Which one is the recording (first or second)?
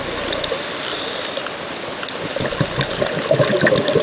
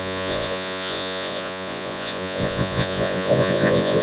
first